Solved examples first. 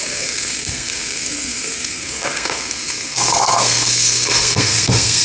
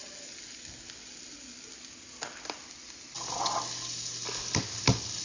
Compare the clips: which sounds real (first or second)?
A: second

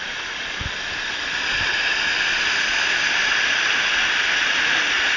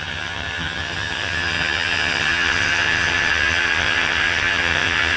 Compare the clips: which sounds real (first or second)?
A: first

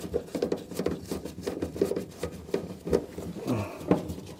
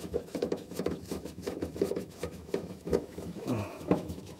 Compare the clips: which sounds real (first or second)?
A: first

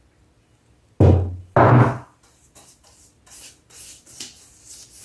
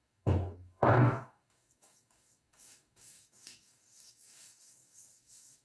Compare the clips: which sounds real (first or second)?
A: first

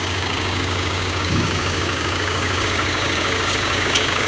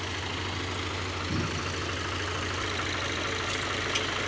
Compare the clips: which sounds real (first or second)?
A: second